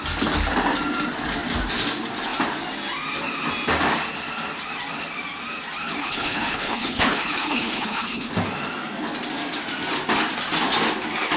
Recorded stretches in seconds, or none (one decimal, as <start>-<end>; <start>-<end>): 0.0-6.0; 8.3-11.4